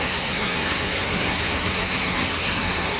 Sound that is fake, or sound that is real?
fake